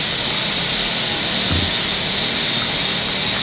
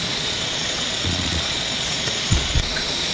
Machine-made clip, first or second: second